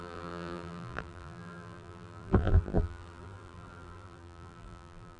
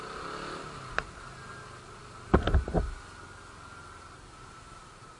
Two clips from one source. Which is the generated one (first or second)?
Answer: first